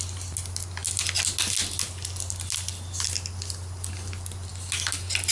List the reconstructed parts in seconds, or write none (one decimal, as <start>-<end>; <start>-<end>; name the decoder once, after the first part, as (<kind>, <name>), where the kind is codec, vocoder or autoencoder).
none